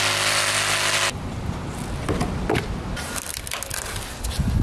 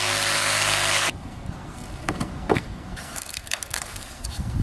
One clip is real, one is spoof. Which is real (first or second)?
first